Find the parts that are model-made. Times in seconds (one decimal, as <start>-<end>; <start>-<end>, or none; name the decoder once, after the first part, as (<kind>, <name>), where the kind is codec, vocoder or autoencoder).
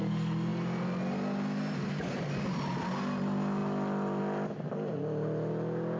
none